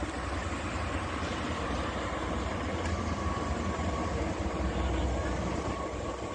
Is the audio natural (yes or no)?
yes